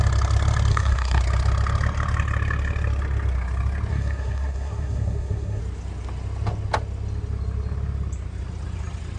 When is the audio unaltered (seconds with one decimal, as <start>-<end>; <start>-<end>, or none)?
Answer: 0.0-0.7; 1.2-3.9; 5.6-9.2